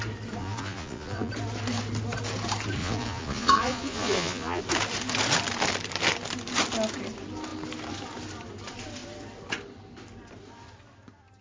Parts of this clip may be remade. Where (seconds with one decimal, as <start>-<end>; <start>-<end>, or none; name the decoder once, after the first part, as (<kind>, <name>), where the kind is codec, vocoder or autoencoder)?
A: 0.4-1.3 (vocoder, Vocos); 2.8-4.6